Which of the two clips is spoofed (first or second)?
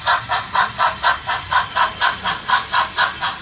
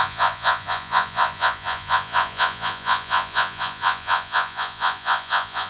second